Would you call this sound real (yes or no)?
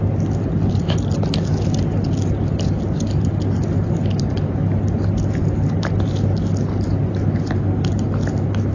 yes